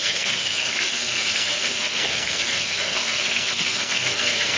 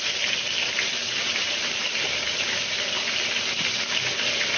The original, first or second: second